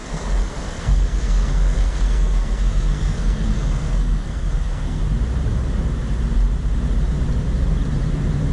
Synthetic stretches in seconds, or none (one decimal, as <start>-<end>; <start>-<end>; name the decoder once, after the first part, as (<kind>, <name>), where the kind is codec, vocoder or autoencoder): 0.0-5.0 (codec, SNAC)